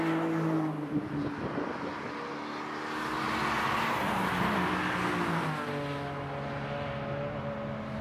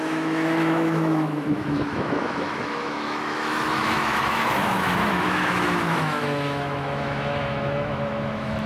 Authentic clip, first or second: first